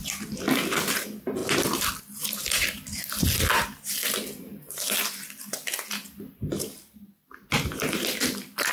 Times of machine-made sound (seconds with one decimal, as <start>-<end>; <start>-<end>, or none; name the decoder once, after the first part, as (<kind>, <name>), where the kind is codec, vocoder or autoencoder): none